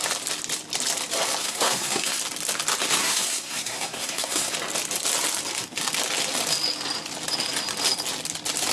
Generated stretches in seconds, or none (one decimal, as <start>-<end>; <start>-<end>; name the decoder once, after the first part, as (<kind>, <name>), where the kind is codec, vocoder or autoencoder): 1.4-2.2 (codec, SNAC); 3.0-4.5